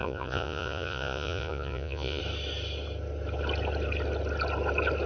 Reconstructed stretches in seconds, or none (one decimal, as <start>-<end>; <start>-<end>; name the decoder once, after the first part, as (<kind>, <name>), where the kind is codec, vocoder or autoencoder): 0.0-2.2 (vocoder, Vocos)